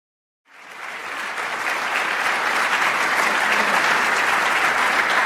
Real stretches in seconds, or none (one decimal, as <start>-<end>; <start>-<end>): 0.0-5.3

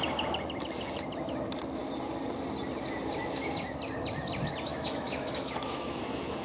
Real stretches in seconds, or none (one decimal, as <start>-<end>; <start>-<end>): 0.0-4.7; 6.0-6.4

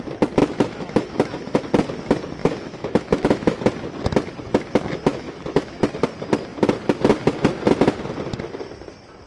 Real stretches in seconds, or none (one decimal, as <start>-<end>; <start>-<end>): 0.0-0.4; 1.6-2.4; 3.6-5.1; 5.8-9.3

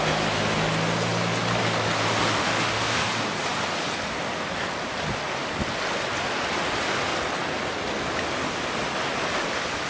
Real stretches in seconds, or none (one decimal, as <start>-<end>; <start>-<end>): 0.0-2.4; 3.1-9.9

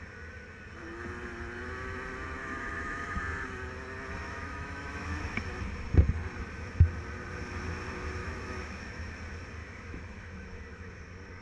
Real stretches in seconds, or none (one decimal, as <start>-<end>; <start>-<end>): 0.0-2.4; 3.2-4.2; 5.6-8.2; 9.1-9.6; 10.9-11.4

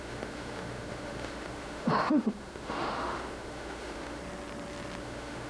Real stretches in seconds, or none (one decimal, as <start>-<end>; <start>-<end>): 4.2-5.0

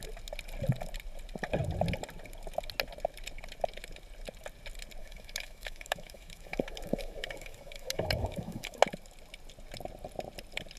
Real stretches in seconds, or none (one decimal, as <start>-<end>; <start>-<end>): 0.0-5.0; 8.8-10.8